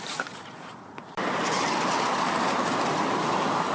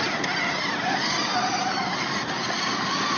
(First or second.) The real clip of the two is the second